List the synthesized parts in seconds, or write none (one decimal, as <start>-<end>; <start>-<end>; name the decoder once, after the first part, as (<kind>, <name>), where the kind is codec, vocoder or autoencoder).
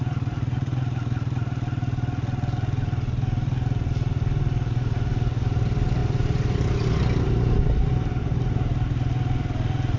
none